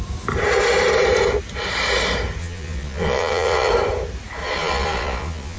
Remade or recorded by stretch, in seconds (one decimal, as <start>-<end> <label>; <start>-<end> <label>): 0.0-2.4 recorded; 2.4-3.7 remade; 3.7-4.4 recorded; 4.4-5.6 remade